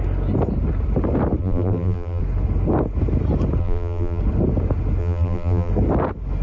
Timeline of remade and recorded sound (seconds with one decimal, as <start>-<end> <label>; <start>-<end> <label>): 0.0-1.4 recorded; 1.4-2.2 remade; 2.2-3.6 recorded; 3.6-4.2 remade; 4.2-5.0 recorded; 5.0-5.7 remade; 5.7-6.4 recorded